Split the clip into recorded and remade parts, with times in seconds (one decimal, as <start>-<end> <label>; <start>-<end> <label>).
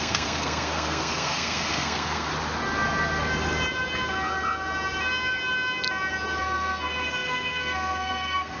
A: 0.0-2.3 remade; 2.3-6.4 recorded; 6.4-8.6 remade